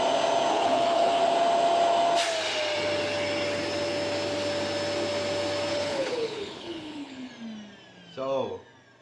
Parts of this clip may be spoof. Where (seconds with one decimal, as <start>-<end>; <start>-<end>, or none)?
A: 0.5-1.2; 5.7-7.3